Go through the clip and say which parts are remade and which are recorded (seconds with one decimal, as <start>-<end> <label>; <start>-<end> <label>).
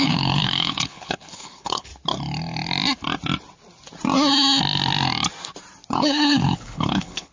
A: 0.0-1.9 remade; 1.9-5.9 recorded; 5.9-7.3 remade